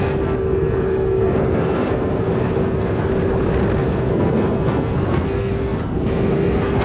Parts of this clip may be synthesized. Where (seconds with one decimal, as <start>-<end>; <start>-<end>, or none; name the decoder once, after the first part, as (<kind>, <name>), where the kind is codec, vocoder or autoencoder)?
0.0-3.1 (codec, SNAC); 3.8-6.8